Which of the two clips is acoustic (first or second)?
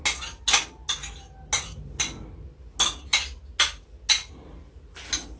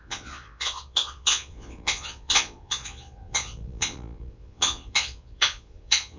first